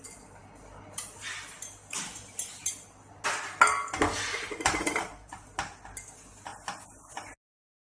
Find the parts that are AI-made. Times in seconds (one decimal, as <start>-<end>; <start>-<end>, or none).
4.3-5.4